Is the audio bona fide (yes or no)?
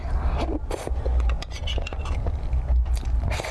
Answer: yes